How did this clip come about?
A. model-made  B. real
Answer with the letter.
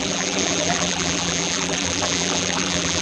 A